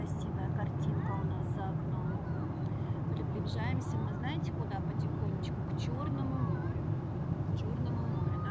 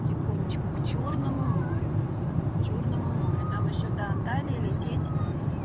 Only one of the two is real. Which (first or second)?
first